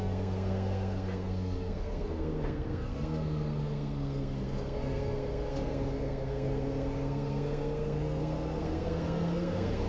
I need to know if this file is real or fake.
fake